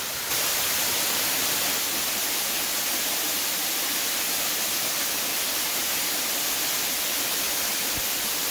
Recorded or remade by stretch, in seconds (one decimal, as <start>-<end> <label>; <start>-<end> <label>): 0.0-8.5 recorded